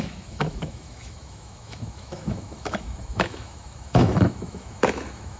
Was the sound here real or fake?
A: fake